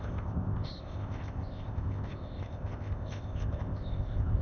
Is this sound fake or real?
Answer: fake